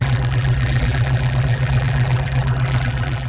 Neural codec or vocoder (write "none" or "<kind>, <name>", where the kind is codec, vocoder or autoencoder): vocoder, BigVGAN v2